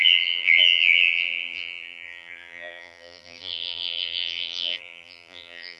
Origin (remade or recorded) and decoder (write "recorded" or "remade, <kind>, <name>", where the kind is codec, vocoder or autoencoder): remade, vocoder, BigVGAN v2